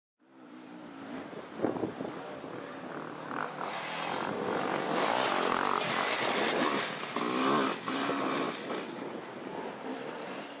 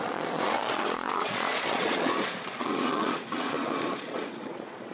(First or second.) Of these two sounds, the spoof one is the second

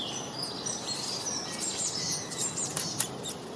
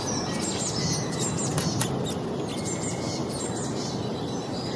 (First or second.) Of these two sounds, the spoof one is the first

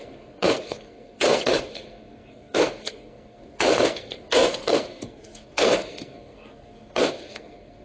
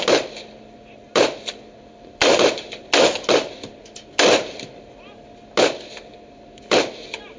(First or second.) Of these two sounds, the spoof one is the first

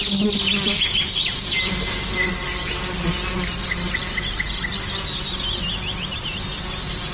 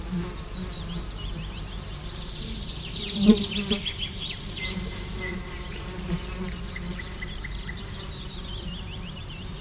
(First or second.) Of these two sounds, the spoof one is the second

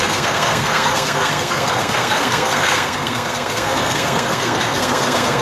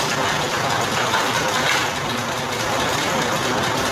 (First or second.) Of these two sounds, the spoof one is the first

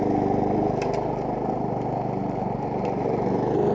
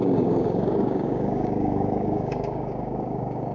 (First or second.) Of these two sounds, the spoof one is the second